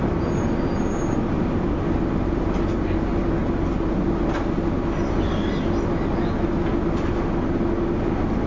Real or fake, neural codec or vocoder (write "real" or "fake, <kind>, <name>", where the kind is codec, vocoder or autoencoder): real